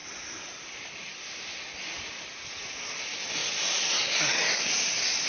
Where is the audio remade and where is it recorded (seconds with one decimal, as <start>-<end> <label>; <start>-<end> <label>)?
0.0-5.3 recorded